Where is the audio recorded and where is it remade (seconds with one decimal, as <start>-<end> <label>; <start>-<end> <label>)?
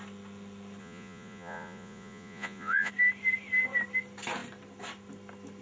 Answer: 0.0-0.8 recorded; 0.8-2.9 remade; 2.9-5.6 recorded